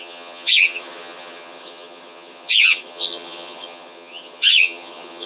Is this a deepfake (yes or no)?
yes